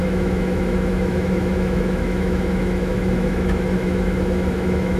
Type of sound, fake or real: fake